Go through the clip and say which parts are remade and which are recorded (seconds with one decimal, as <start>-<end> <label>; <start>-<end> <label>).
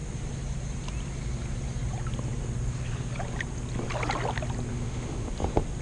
0.0-4.7 recorded; 4.7-5.3 remade; 5.3-5.8 recorded